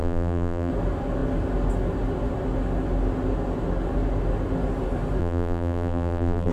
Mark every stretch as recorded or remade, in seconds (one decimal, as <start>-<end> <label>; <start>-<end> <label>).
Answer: 0.0-0.7 remade; 0.7-5.2 recorded; 5.2-6.5 remade